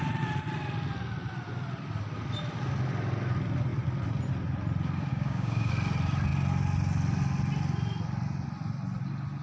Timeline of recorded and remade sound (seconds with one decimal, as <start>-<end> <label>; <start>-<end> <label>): 0.0-5.1 recorded; 5.1-5.7 remade; 5.7-9.4 recorded